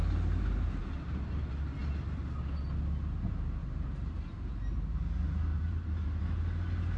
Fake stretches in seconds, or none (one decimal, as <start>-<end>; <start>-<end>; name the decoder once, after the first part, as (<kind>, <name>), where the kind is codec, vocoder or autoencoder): 3.6-4.5 (vocoder, BigVGAN v2); 5.5-6.2